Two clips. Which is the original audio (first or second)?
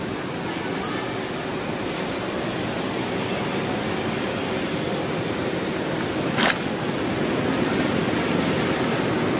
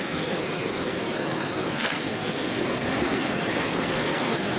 first